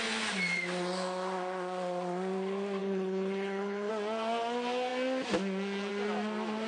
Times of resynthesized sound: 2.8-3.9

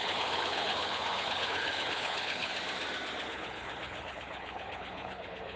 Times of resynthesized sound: 0.0-2.5; 3.3-5.6

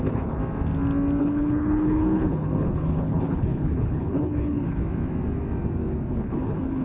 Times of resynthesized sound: 0.0-0.4; 1.2-4.8; 6.1-6.8

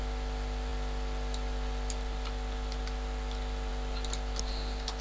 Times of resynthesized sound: none